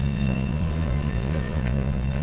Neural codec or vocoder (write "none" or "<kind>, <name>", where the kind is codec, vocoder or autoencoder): vocoder, Vocos